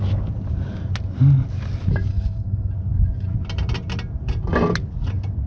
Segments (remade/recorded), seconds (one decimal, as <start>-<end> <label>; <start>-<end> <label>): 0.0-2.1 recorded; 2.1-2.7 remade; 2.7-5.5 recorded